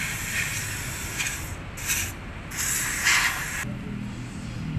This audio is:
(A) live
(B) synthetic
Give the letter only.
A